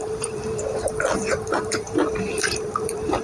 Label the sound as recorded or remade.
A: remade